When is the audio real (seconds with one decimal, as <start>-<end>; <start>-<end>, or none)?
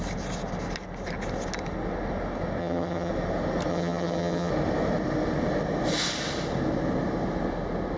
0.0-2.6; 3.1-3.7; 4.5-8.0